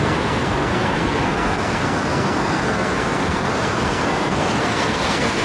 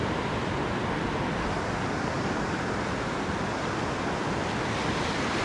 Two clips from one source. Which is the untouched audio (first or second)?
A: second